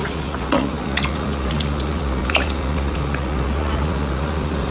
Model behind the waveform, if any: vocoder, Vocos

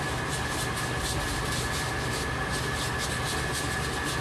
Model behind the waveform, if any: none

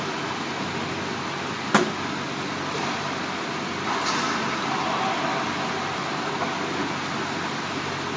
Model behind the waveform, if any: none